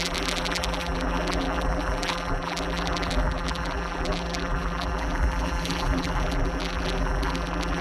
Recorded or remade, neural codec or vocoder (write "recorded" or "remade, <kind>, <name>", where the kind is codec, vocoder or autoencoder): remade, vocoder, BigVGAN v2